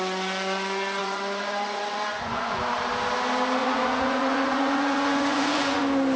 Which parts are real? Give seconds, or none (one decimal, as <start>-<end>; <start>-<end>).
0.0-1.0; 2.6-3.6; 5.8-6.2